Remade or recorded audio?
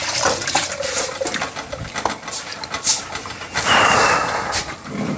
recorded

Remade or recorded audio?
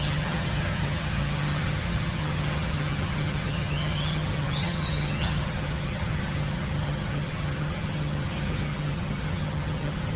remade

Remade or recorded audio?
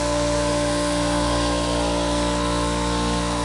remade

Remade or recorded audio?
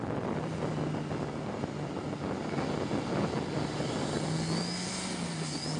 recorded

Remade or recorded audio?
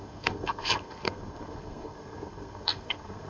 remade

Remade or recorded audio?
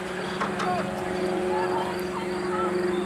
recorded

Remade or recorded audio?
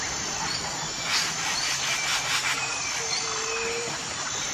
recorded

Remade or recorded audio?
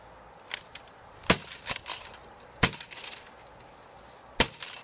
recorded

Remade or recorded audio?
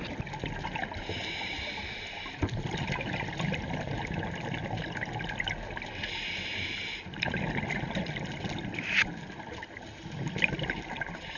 recorded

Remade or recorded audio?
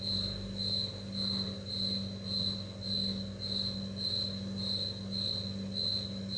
recorded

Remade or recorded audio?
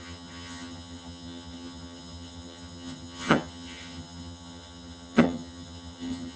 remade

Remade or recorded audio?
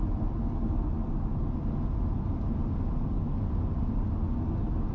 recorded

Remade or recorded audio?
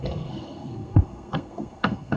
remade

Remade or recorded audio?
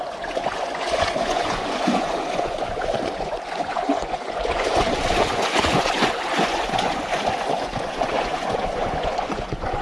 remade